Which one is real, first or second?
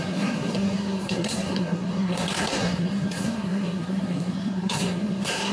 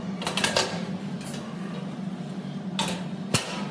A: second